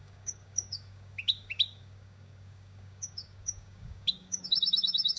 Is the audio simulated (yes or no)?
yes